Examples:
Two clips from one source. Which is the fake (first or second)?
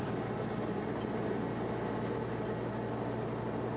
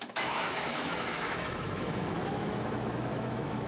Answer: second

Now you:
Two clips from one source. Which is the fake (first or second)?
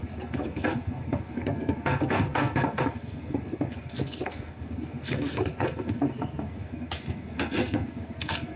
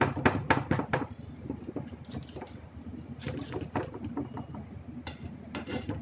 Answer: first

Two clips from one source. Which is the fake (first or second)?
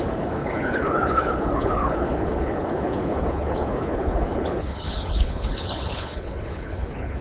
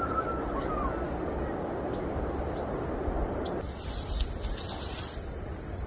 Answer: first